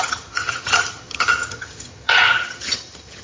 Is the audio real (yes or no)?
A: no